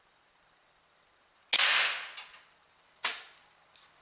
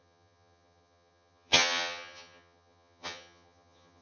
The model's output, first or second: second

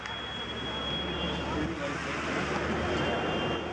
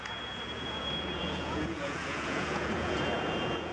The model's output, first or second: second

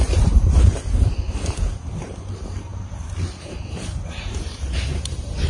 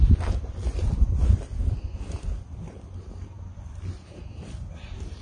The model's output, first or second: first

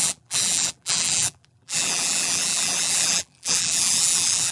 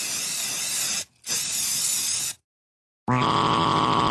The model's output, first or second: first